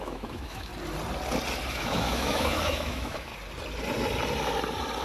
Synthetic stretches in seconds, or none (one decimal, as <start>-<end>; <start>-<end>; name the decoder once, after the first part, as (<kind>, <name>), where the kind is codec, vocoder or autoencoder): 0.0-0.7 (autoencoder, DAC-VAE); 1.7-3.3